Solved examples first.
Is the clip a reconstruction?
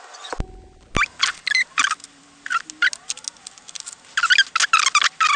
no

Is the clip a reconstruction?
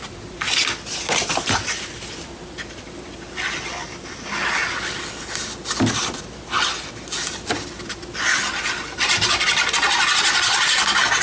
no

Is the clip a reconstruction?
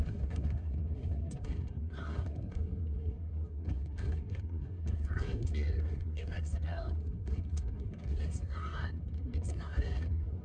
yes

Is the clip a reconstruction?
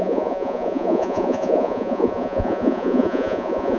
yes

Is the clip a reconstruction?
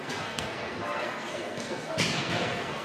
yes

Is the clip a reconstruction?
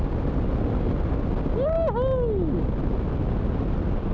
no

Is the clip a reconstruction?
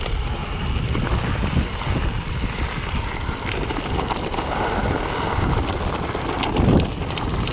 no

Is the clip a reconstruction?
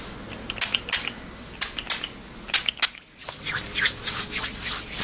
no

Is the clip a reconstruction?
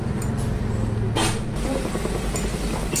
no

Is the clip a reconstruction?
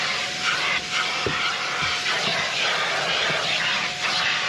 yes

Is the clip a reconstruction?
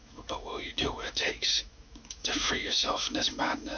yes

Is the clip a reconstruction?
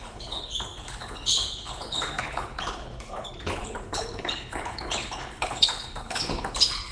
yes